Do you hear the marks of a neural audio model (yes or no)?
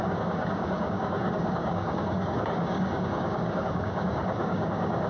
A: yes